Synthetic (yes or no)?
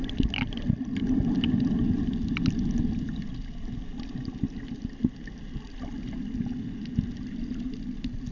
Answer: no